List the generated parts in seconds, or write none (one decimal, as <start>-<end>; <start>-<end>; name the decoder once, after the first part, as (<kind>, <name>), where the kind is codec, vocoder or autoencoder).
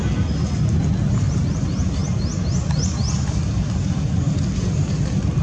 none